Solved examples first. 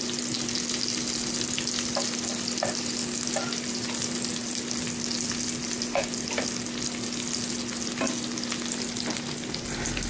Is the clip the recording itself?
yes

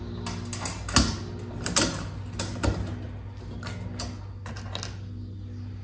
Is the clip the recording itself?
yes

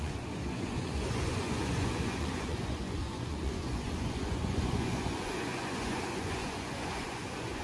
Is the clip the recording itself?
no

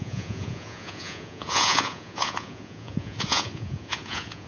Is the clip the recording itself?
no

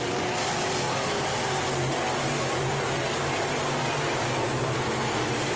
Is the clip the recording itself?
yes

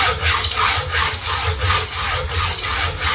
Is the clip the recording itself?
yes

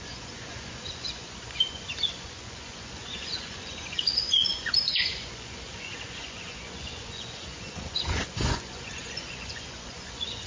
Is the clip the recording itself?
no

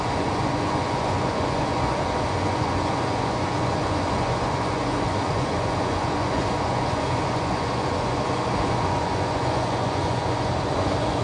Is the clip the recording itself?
no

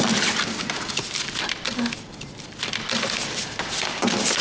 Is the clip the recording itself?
yes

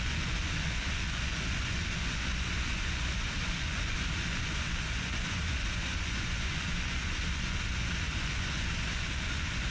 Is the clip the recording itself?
no